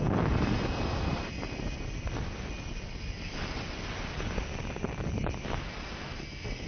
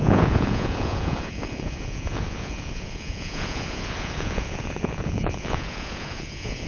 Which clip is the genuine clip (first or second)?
first